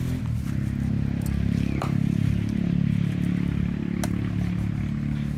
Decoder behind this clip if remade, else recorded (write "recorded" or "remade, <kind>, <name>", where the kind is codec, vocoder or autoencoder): recorded